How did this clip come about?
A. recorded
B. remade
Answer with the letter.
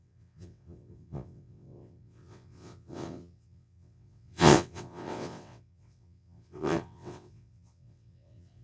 B